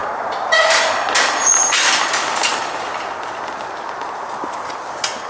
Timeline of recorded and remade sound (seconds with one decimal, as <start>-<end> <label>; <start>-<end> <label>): 0.0-5.3 recorded